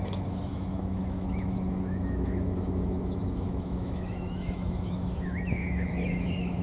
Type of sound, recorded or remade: remade